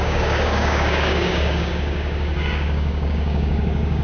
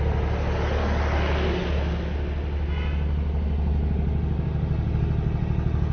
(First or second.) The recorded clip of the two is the second